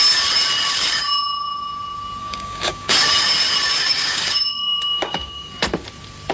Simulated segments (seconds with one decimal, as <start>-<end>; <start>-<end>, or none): 2.2-3.1; 3.9-5.5